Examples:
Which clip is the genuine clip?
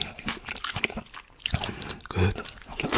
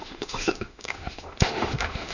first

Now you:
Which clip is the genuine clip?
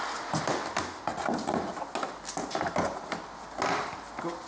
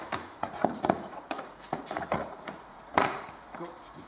first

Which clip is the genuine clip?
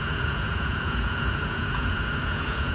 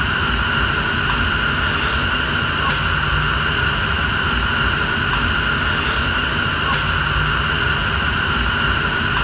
second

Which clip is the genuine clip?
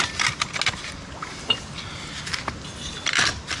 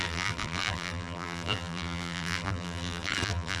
first